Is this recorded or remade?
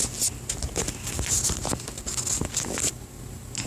recorded